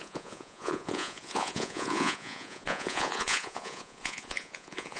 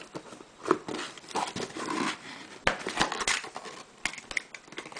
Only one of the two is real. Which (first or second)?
second